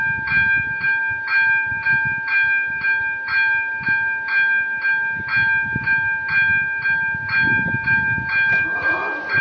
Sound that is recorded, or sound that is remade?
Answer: recorded